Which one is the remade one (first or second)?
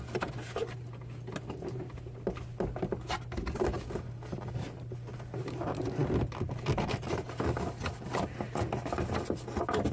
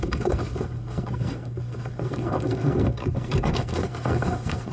second